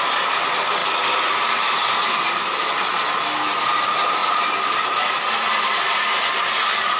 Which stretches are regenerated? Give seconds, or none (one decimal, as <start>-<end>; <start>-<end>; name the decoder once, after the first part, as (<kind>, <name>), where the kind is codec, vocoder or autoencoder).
none